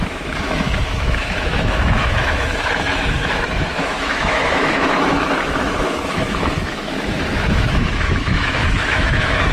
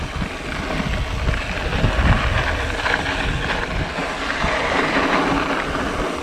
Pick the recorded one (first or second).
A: second